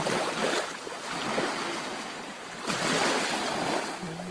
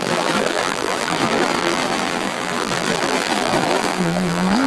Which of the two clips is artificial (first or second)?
second